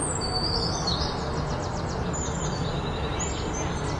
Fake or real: real